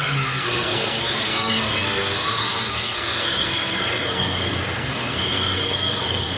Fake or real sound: fake